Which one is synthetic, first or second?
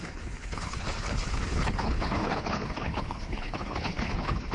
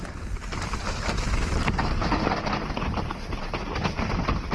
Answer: first